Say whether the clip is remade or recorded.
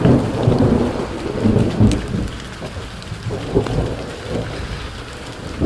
recorded